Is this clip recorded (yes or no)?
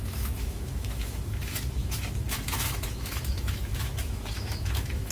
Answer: no